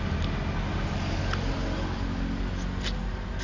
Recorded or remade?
recorded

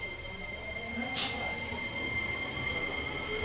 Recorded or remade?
recorded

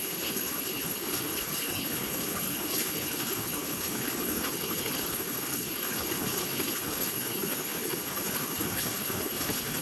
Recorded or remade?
remade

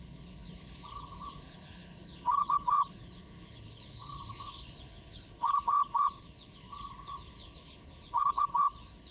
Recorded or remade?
remade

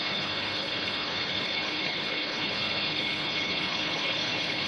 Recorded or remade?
remade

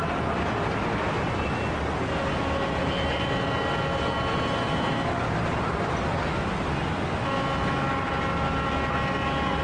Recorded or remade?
recorded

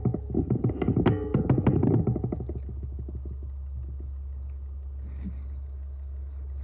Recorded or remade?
recorded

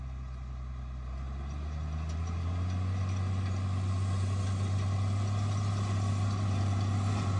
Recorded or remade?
recorded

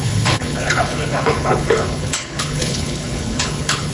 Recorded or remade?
remade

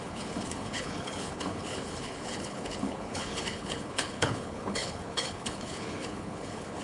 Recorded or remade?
remade